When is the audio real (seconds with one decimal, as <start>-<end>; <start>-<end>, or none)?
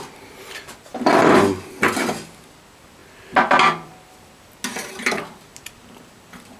0.0-3.0; 3.9-6.6